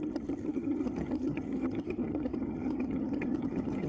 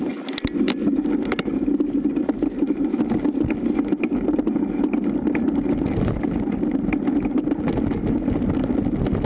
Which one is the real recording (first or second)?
second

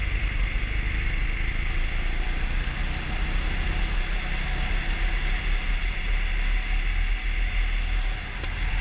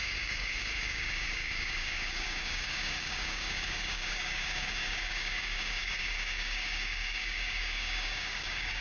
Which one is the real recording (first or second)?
first